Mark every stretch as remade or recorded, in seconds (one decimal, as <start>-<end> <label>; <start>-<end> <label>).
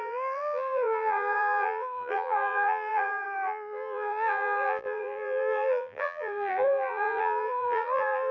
0.0-8.3 remade